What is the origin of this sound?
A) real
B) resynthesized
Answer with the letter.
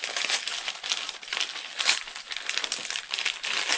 A